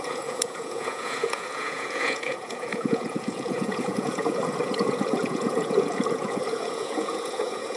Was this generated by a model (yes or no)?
yes